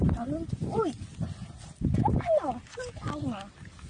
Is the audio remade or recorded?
remade